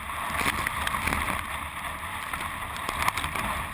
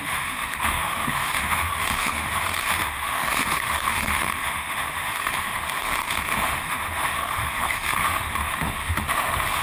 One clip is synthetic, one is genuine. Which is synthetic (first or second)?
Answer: second